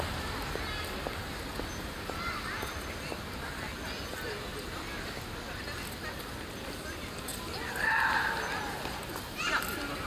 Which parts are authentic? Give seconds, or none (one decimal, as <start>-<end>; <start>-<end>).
0.0-10.1